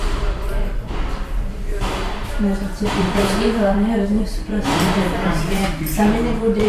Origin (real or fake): fake